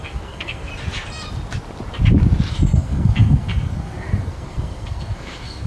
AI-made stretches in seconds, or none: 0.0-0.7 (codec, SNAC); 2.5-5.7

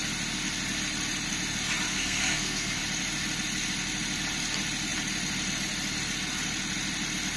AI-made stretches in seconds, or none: 1.9-2.8 (codec, SNAC)

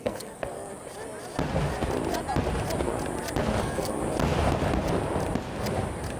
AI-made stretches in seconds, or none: 0.0-0.7 (codec, SNAC); 3.6-4.0